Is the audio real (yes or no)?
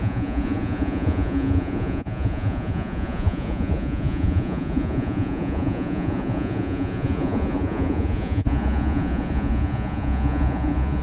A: no